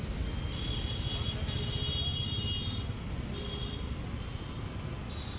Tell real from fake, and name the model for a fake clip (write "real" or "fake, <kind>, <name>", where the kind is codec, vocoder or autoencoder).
real